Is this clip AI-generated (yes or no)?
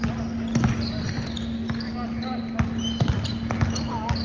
no